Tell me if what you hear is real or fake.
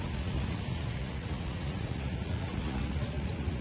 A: fake